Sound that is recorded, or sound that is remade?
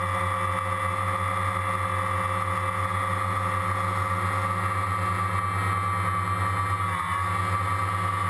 recorded